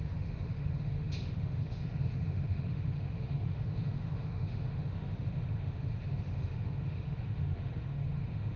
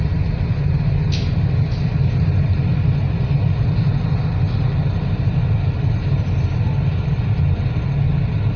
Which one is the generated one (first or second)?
first